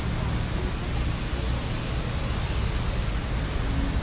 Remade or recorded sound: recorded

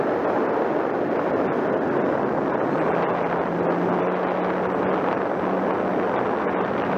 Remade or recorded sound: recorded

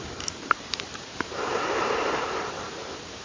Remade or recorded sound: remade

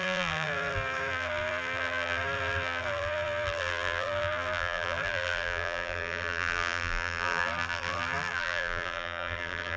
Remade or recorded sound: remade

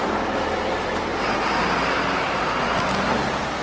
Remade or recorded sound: recorded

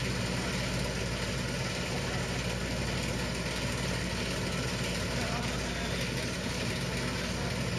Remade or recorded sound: recorded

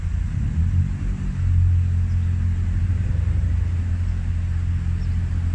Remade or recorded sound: recorded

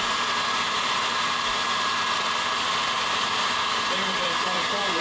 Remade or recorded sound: remade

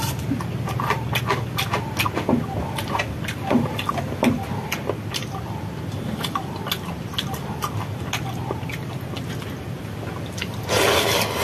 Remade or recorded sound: recorded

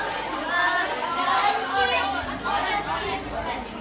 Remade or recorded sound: recorded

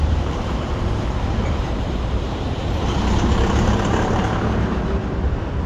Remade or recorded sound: remade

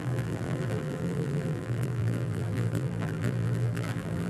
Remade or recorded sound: remade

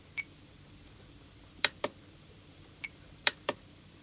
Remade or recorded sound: remade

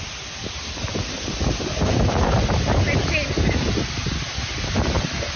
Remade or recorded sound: recorded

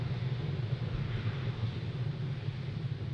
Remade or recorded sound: recorded